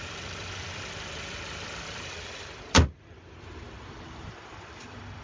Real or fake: fake